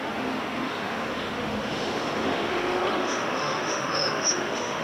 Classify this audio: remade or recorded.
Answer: remade